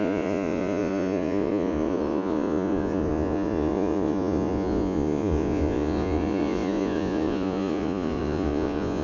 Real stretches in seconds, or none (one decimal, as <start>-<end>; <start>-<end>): none